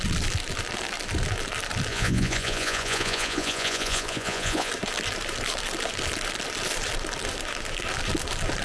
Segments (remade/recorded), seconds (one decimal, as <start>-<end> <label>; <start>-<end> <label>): 0.0-1.9 recorded; 1.9-4.7 remade; 4.7-8.6 recorded